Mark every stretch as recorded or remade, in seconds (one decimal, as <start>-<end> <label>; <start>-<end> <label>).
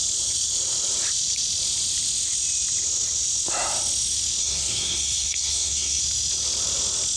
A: 0.0-4.4 recorded; 4.4-6.0 remade; 6.0-7.2 recorded